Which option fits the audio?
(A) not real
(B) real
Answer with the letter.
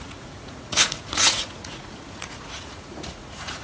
A